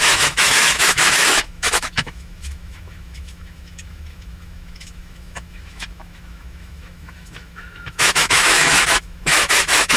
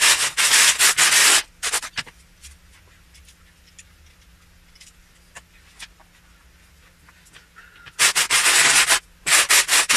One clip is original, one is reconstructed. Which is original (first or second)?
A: second